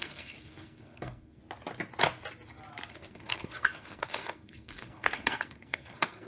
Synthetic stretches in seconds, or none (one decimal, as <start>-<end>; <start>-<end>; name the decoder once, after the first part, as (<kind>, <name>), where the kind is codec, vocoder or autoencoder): 0.0-1.4 (codec, SNAC); 2.9-6.3